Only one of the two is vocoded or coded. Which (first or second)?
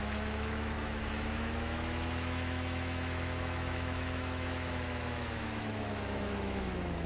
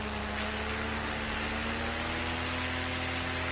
first